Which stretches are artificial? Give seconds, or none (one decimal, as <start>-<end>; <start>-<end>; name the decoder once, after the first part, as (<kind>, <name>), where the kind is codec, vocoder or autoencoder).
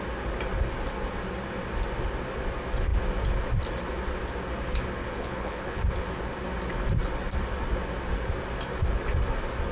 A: 5.0-5.8 (codec, HILCodec)